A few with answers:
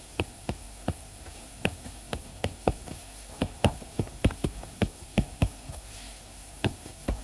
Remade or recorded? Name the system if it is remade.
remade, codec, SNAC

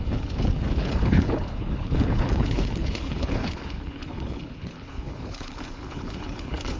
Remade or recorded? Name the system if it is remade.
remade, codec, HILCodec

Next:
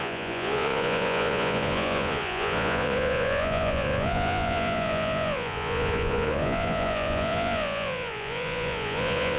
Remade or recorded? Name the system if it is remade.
remade, vocoder, Vocos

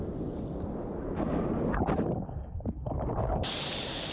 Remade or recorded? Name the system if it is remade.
recorded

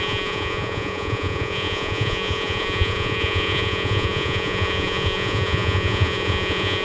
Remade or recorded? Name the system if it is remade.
remade, vocoder, Vocos